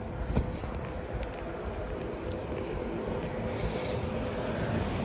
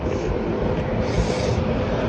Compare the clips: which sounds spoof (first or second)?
second